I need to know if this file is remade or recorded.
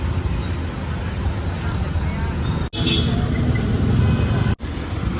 recorded